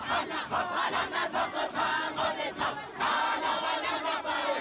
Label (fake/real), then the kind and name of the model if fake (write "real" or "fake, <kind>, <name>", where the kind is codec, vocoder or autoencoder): real